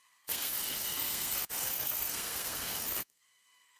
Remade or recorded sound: remade